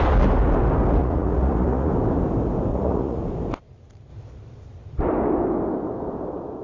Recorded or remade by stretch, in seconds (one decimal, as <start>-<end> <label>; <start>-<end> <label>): 0.0-1.0 recorded; 1.0-1.9 remade; 1.9-2.7 recorded; 2.7-3.2 remade; 3.2-6.6 recorded